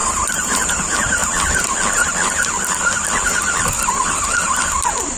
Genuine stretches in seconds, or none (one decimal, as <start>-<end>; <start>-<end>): 1.2-3.9